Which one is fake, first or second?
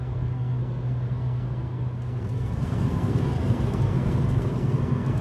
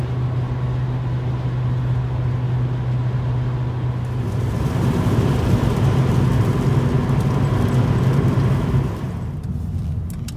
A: first